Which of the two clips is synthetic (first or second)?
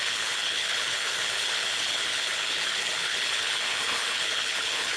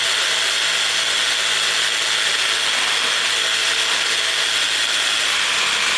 first